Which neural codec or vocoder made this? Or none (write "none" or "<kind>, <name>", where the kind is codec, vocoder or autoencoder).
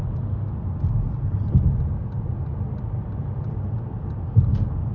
none